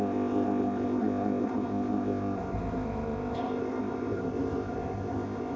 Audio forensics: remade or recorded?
remade